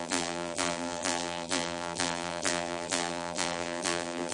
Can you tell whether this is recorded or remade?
remade